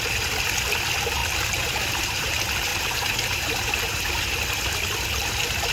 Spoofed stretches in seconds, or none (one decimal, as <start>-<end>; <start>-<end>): 1.2-2.3; 2.7-4.2